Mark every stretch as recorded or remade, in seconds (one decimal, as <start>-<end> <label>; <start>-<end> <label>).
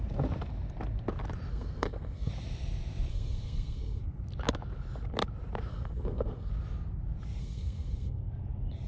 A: 0.0-1.5 recorded; 1.5-2.3 remade; 2.3-3.1 recorded; 3.1-4.0 remade; 4.0-5.7 recorded; 5.7-6.5 remade; 6.5-7.4 recorded; 7.4-8.3 remade; 8.3-8.9 recorded